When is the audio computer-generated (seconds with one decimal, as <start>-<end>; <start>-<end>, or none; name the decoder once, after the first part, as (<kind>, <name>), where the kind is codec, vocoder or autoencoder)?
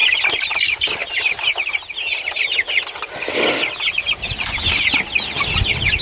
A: none